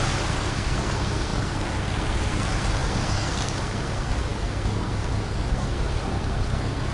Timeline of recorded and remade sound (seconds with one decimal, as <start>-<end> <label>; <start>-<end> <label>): 0.0-6.9 remade